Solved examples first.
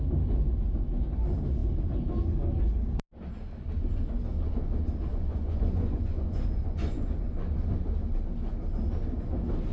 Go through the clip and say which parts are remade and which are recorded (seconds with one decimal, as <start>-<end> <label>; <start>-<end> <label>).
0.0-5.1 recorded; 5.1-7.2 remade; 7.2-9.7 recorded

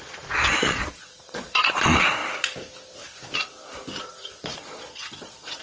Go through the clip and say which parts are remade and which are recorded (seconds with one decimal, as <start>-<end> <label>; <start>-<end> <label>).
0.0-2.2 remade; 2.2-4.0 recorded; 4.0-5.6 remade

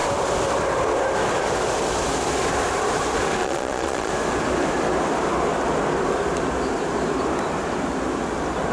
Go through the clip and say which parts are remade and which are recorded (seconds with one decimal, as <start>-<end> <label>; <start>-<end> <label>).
0.0-3.4 recorded; 3.4-4.1 remade; 4.1-8.7 recorded

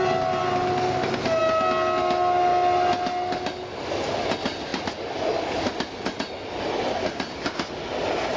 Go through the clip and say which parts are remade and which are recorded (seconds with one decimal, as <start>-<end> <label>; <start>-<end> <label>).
0.0-8.4 recorded

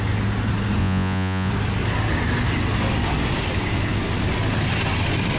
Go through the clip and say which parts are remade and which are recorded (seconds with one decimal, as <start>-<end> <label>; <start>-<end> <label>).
0.0-0.8 recorded; 0.8-1.5 remade; 1.5-5.4 recorded

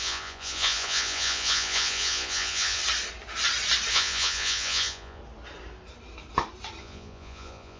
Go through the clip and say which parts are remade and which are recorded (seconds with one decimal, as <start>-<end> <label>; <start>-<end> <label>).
0.0-2.8 remade; 2.8-3.9 recorded; 3.9-5.2 remade; 5.2-6.8 recorded; 6.8-7.8 remade

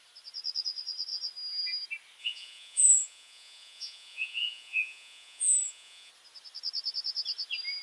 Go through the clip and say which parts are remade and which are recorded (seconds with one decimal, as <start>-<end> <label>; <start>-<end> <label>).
0.0-2.2 recorded; 2.2-6.1 remade; 6.1-7.8 recorded

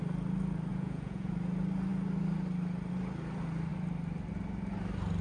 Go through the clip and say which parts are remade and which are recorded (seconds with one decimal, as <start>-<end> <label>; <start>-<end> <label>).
0.0-0.7 recorded; 0.7-1.3 remade; 1.3-5.2 recorded